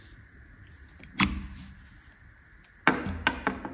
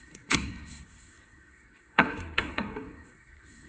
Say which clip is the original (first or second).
first